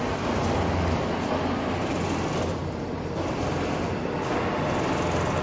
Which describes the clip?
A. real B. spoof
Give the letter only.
A